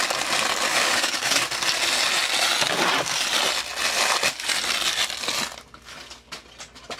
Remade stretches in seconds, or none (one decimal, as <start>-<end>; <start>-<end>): 0.7-1.4